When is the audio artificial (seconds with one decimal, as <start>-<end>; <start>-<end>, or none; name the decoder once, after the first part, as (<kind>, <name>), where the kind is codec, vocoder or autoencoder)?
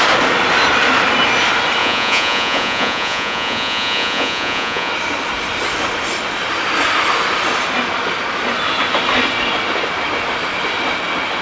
1.8-4.9 (vocoder, Vocos)